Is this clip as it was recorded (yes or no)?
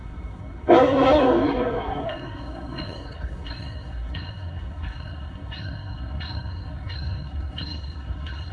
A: no